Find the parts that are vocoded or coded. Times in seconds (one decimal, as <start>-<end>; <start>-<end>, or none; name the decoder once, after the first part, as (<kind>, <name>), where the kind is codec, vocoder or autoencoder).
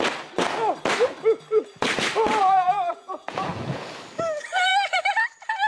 2.4-3.9 (vocoder, Vocos)